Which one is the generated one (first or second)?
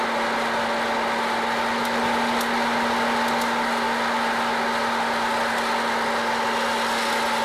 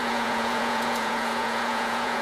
second